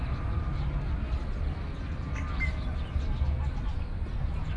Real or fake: real